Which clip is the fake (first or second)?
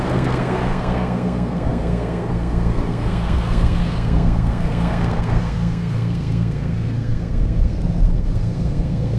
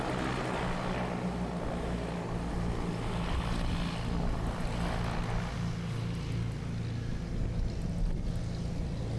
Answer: first